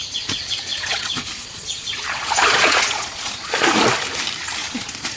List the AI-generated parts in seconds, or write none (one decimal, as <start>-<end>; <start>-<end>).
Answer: 0.7-3.8; 4.6-5.2